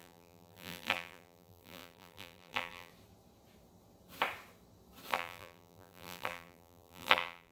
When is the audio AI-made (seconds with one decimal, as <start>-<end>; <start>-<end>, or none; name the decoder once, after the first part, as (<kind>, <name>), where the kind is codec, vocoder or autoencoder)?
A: 0.0-2.9 (vocoder, BigVGAN v2); 5.1-7.5